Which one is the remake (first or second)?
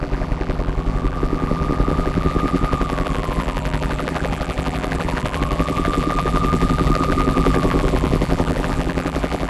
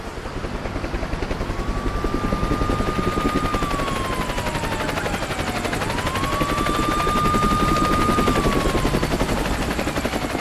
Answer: first